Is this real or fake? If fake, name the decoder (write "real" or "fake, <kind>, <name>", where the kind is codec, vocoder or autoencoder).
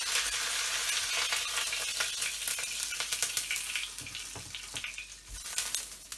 real